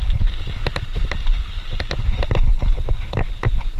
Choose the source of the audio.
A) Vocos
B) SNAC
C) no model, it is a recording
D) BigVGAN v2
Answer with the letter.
C